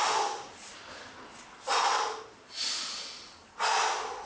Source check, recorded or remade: recorded